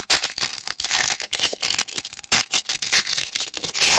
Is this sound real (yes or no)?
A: no